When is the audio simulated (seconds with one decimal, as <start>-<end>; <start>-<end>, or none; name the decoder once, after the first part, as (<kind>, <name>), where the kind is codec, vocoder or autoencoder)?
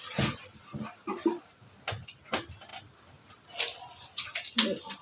none